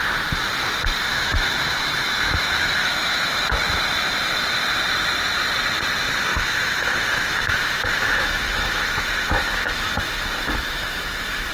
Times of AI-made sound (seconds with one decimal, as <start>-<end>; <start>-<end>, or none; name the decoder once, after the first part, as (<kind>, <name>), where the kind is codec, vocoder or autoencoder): 1.1-3.5 (autoencoder, DAC-VAE); 6.3-11.5